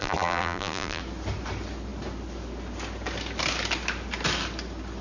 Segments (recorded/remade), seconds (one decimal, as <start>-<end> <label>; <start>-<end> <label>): 0.0-1.0 remade; 1.0-5.0 recorded